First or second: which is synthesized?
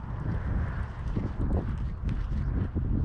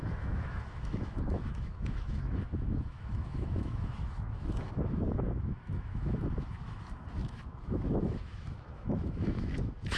second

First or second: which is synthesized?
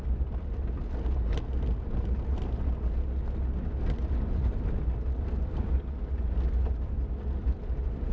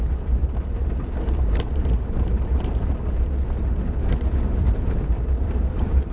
second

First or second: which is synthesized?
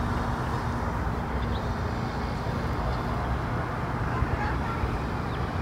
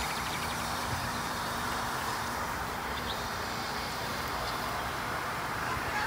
second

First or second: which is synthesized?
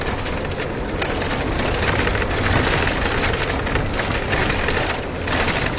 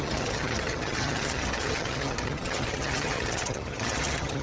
second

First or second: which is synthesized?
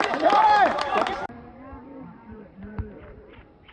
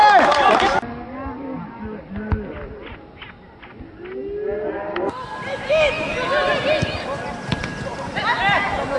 first